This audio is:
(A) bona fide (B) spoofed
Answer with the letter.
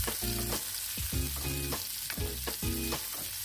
A